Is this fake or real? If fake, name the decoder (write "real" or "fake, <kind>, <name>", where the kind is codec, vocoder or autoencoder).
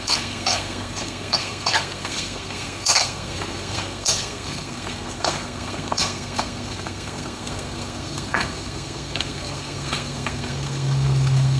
fake, codec, SNAC